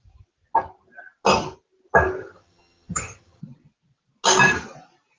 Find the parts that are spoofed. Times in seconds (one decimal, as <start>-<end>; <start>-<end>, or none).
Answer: 2.2-3.4